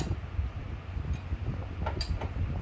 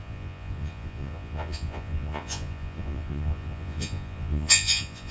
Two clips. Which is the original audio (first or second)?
first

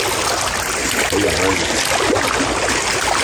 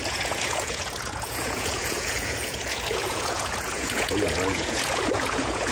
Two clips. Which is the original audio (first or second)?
first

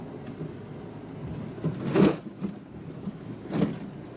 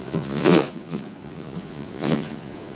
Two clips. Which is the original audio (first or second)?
first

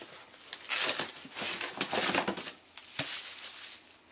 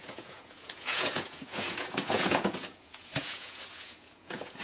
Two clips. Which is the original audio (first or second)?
first